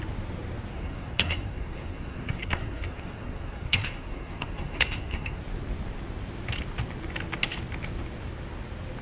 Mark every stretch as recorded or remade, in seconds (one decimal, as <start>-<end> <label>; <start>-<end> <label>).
0.0-0.7 recorded; 0.7-5.4 remade; 5.4-9.0 recorded